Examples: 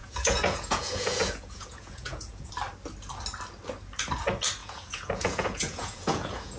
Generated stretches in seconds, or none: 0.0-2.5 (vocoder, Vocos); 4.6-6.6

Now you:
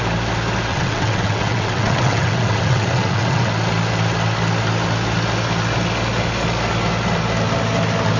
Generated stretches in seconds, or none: 0.7-3.5 (vocoder, WaveNeXt)

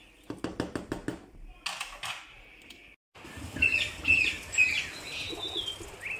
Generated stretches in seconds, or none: none

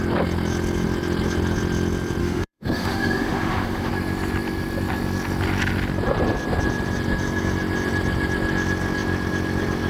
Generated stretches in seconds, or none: 2.2-3.9 (autoencoder, DAC-VAE)